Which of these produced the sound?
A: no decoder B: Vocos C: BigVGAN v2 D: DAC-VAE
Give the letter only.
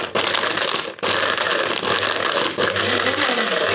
A